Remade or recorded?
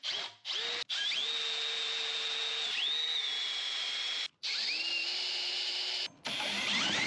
recorded